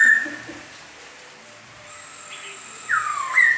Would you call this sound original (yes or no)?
yes